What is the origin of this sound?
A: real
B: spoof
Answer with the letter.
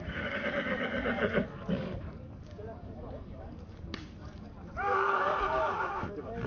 B